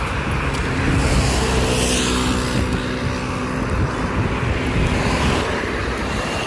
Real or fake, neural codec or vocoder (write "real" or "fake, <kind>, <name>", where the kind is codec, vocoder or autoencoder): real